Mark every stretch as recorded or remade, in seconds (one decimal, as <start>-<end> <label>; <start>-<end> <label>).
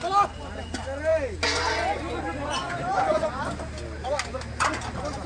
0.0-5.3 recorded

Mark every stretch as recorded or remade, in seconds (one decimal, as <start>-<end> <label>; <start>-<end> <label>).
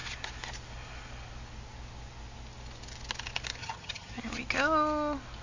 0.0-3.6 recorded; 3.6-4.1 remade; 4.1-5.4 recorded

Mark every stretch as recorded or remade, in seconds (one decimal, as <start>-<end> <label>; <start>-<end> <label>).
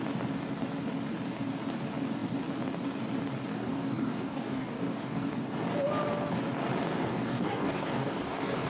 0.0-3.5 recorded; 3.5-5.3 remade; 5.3-7.1 recorded; 7.1-8.7 remade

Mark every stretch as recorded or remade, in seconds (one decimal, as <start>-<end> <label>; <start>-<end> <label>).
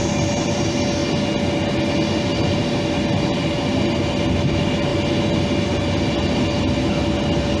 0.0-7.6 recorded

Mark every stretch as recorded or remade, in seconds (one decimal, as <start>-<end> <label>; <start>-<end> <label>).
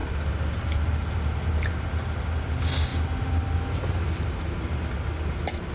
0.0-5.7 recorded